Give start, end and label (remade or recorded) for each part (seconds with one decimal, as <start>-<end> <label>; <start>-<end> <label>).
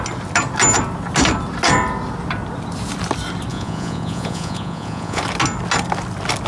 0.0-3.5 recorded; 3.5-5.2 remade; 5.2-6.5 recorded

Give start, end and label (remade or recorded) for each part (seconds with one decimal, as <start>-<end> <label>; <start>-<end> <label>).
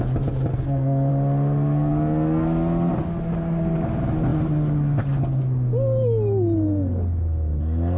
0.0-0.5 recorded; 0.5-1.1 remade; 1.1-8.0 recorded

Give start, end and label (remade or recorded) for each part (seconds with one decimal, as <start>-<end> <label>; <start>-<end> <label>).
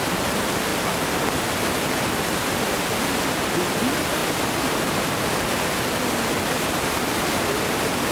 0.0-0.7 remade; 0.7-2.0 recorded; 2.0-8.1 remade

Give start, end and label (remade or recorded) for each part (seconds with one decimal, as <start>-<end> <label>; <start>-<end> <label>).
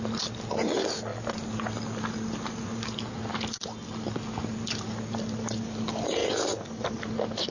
0.0-7.5 recorded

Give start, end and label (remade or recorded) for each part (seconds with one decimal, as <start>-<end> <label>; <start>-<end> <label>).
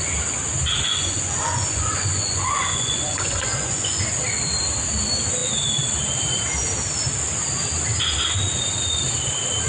0.0-0.9 recorded; 0.9-4.0 remade; 4.0-9.7 recorded